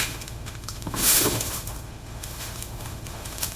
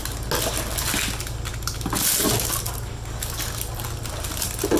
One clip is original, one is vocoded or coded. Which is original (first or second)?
second